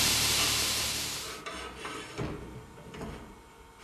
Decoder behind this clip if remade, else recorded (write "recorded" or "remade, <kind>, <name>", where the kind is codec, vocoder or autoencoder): recorded